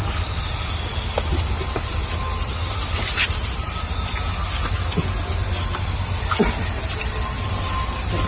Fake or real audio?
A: real